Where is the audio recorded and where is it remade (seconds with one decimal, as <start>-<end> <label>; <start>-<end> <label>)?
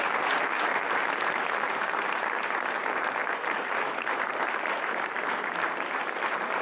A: 0.0-6.6 remade